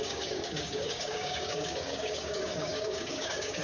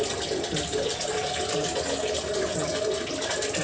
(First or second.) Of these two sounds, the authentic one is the second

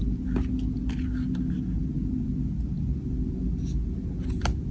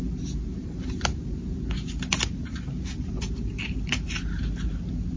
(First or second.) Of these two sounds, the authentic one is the first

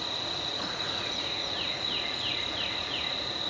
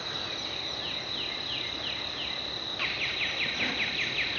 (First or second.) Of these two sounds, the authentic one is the second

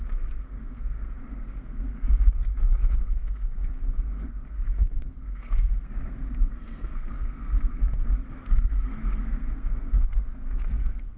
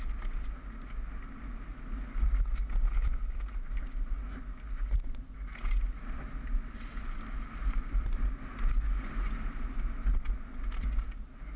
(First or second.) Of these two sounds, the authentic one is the second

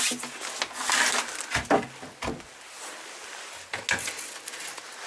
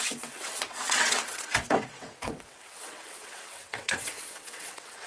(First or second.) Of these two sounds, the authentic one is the first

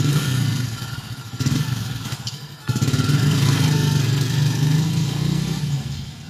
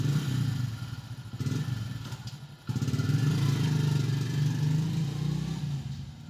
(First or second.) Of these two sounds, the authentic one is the second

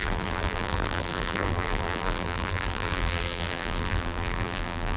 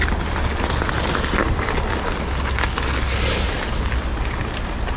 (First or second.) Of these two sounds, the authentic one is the second